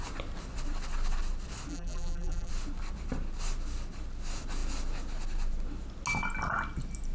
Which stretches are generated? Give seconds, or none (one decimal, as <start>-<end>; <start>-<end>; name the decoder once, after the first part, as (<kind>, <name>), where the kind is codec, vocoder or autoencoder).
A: 1.7-2.5 (vocoder, BigVGAN v2)